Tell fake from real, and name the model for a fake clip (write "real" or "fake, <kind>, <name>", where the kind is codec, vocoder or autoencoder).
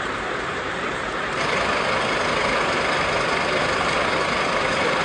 real